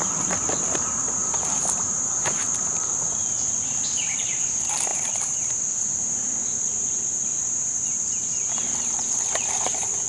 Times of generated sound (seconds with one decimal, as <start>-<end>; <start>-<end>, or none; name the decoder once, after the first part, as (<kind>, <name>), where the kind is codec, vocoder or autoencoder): 0.0-6.7 (vocoder, BigVGAN v2); 7.4-10.1